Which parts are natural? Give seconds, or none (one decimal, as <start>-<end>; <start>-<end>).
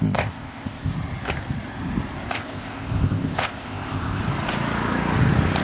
0.9-2.3; 4.2-5.6